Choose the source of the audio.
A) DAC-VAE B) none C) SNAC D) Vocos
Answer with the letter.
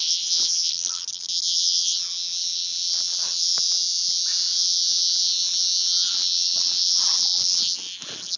B